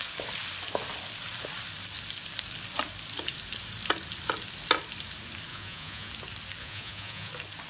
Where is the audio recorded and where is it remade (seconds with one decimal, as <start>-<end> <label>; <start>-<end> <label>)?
0.0-5.5 recorded; 5.5-6.1 remade; 6.1-6.6 recorded; 6.6-7.3 remade; 7.3-7.7 recorded